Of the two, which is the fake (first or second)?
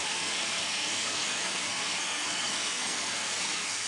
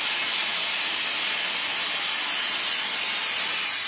first